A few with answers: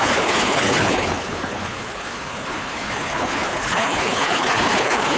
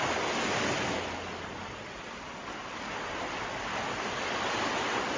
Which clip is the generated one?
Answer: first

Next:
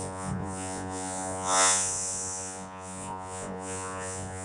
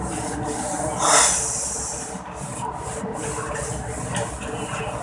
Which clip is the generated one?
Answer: first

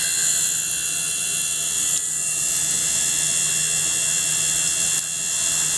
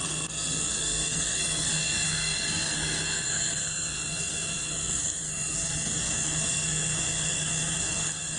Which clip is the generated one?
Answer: second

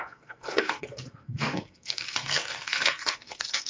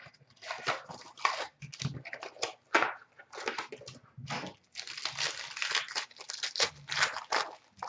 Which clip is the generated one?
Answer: first